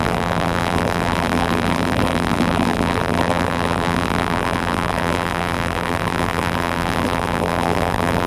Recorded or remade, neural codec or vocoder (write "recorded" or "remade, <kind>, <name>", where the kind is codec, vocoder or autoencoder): remade, vocoder, BigVGAN v2